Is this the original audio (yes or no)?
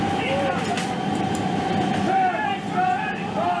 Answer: yes